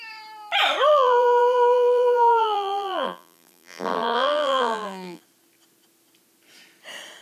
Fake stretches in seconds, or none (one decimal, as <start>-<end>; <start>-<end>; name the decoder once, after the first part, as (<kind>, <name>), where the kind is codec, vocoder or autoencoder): 0.9-5.2 (vocoder, BigVGAN v2)